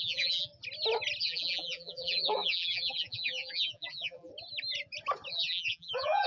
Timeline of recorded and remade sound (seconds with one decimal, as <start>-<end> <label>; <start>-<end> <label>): 0.0-0.5 remade; 0.5-1.2 recorded; 1.2-4.3 remade; 4.3-5.3 recorded; 5.3-6.3 remade

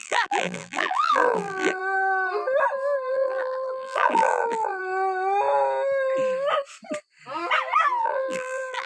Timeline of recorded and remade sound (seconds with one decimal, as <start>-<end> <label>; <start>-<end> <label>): 0.0-1.8 remade; 1.8-3.1 recorded; 3.1-4.8 remade; 4.8-8.0 recorded; 8.0-8.9 remade

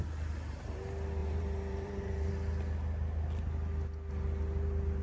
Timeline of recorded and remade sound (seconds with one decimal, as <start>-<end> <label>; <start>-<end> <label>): 0.0-1.2 recorded; 1.2-2.3 remade; 2.3-5.0 recorded

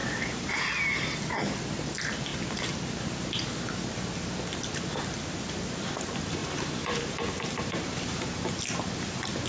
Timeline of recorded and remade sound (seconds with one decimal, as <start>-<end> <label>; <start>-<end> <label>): 0.0-0.6 remade; 0.6-6.4 recorded; 6.4-8.6 remade; 8.6-9.5 recorded

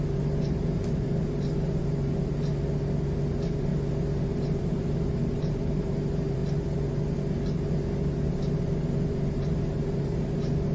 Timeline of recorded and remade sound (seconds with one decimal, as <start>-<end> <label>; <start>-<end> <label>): 0.0-2.3 remade; 2.3-3.3 recorded; 3.3-3.7 remade; 3.7-4.2 recorded; 4.2-6.4 remade; 6.4-8.3 recorded; 8.3-10.7 remade

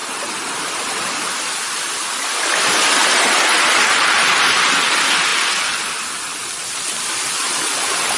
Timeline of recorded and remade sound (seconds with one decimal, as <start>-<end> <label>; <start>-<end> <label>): 0.0-1.1 remade; 1.1-3.0 recorded; 3.0-4.7 remade; 4.7-8.2 recorded